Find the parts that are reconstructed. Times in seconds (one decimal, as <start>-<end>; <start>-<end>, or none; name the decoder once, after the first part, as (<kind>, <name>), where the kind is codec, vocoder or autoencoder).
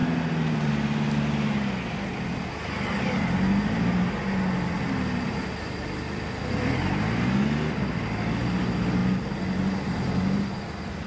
none